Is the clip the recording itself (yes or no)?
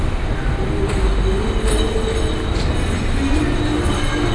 yes